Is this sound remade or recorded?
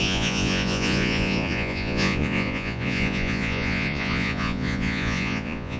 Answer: remade